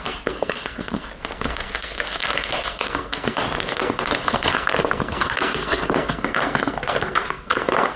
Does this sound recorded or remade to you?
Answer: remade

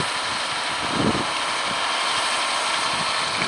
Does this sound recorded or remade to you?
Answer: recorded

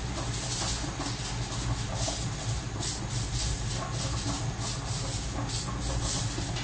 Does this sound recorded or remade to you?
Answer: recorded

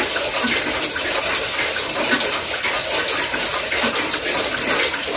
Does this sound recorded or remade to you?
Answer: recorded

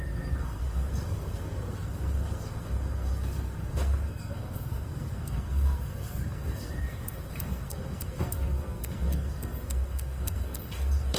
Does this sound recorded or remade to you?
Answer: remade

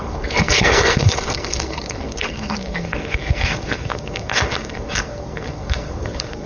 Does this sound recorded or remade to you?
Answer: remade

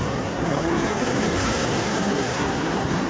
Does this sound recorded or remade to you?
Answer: remade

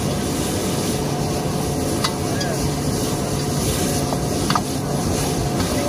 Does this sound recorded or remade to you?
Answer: recorded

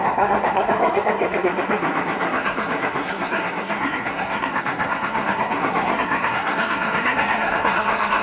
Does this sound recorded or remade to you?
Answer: remade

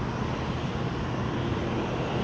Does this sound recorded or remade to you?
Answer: recorded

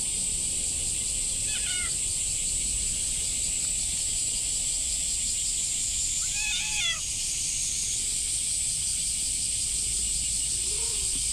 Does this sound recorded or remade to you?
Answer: recorded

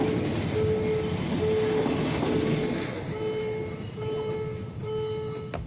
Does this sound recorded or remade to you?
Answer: recorded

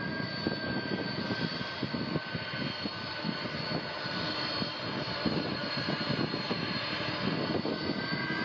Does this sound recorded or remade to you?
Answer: recorded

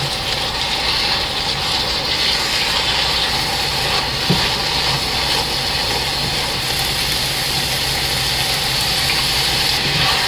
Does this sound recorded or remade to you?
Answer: recorded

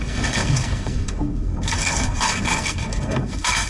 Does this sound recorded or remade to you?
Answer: remade